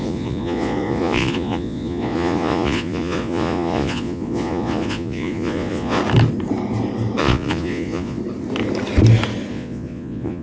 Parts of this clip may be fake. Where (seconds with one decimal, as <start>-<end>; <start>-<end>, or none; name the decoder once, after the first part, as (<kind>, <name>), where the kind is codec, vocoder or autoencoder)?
0.0-6.0 (vocoder, Vocos); 7.2-8.2; 9.5-10.4